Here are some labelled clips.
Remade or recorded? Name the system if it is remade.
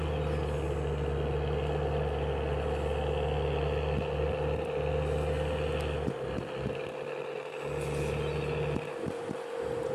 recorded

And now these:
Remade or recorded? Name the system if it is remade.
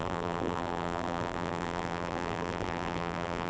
remade, vocoder, BigVGAN v2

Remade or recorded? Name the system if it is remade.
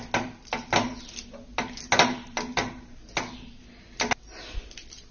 recorded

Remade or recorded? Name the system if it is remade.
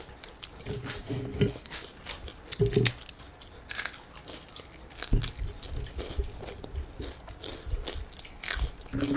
recorded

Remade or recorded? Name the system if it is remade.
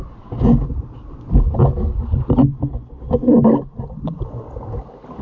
recorded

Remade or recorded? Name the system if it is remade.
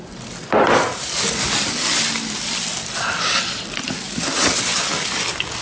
recorded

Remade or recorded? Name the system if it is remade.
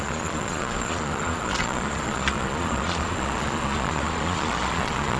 remade, vocoder, Vocos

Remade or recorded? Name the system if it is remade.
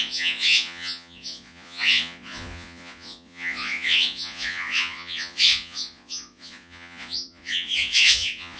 remade, vocoder, Vocos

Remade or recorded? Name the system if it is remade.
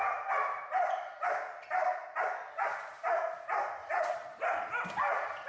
recorded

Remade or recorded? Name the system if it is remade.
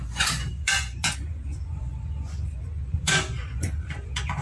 remade, vocoder, Vocos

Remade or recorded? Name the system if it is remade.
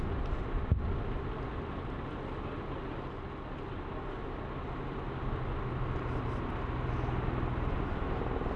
recorded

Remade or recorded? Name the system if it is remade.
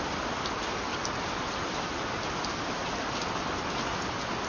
recorded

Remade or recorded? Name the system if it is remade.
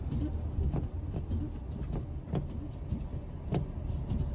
recorded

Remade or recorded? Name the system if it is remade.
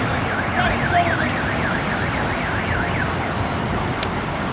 recorded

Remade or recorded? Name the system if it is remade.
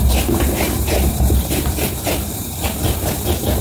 remade, vocoder, BigVGAN v2